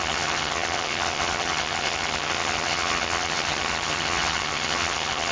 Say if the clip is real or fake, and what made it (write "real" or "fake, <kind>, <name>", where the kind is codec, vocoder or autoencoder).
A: fake, vocoder, HiFi-GAN